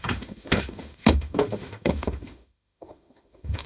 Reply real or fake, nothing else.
fake